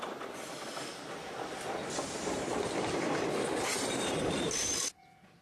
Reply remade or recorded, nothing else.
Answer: recorded